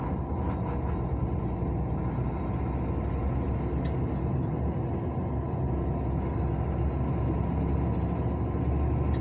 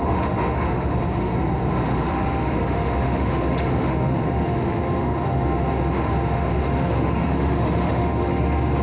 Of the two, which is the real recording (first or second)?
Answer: first